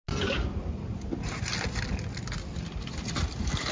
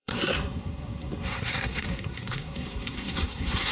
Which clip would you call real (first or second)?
first